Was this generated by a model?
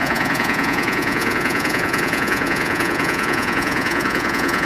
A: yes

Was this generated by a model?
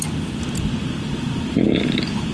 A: no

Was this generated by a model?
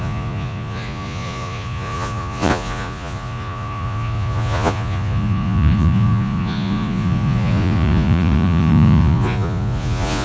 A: yes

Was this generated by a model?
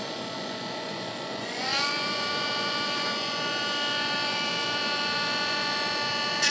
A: yes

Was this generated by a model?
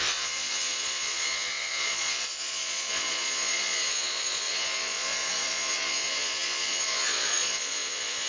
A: yes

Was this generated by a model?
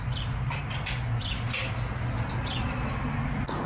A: no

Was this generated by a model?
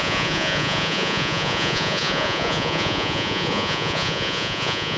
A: yes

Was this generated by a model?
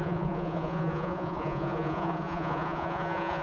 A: yes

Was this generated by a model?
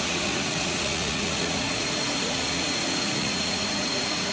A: yes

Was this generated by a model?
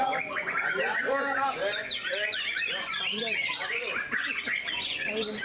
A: yes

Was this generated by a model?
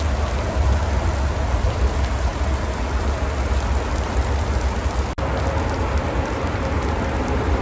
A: no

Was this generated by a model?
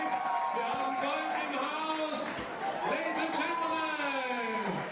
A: no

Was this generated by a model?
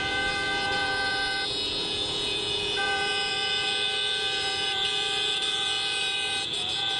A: yes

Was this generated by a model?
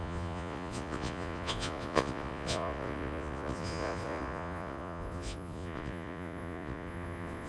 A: yes